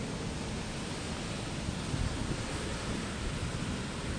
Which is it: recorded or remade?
recorded